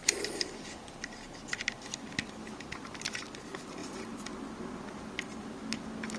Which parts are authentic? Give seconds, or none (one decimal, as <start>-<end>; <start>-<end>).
0.0-3.8; 4.4-6.2